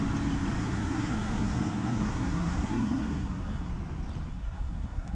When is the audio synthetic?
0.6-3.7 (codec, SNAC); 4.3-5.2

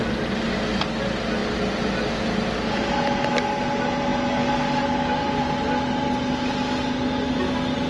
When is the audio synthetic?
none

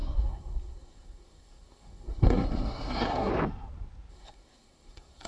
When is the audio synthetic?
0.0-3.3 (codec, SNAC); 4.1-5.3

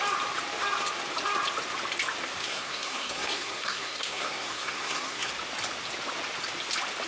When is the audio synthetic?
2.4-5.3 (codec, SNAC)

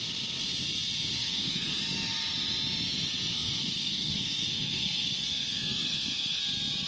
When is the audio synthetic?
1.2-1.8 (codec, SNAC); 3.3-6.4